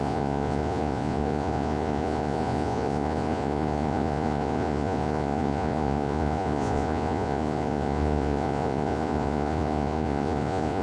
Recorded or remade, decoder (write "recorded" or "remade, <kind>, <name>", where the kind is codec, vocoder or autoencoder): remade, vocoder, Vocos